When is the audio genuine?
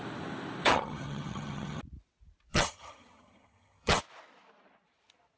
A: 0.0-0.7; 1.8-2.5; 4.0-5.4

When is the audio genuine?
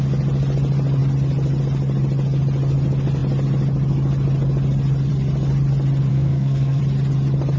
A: 0.0-6.1; 6.8-7.6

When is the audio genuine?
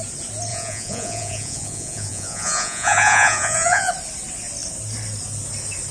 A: 0.0-0.5; 3.9-5.9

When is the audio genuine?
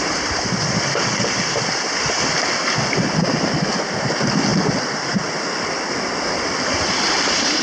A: 0.0-7.6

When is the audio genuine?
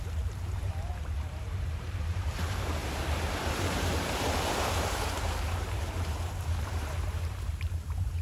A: none